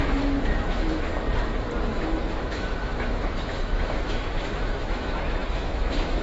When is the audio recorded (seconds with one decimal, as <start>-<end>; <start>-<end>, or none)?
1.1-1.9